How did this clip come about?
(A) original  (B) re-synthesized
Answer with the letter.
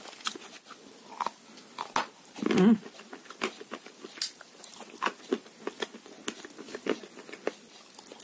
A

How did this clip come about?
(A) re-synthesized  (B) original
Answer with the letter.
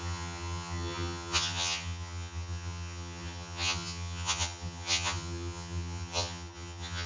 A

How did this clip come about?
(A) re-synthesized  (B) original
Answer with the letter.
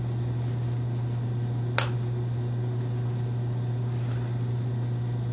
B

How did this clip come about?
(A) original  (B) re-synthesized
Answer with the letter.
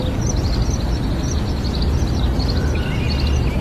A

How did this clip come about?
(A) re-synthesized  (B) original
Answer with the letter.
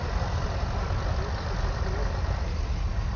B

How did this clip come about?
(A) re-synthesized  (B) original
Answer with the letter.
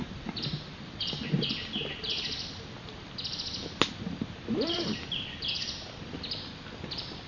B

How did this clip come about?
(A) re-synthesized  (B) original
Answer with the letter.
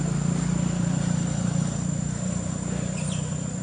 B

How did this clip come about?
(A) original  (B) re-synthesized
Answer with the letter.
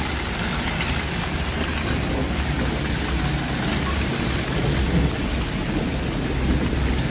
A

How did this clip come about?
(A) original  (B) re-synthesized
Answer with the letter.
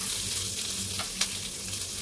A